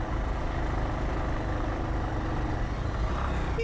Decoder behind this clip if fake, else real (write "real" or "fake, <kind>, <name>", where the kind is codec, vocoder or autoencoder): real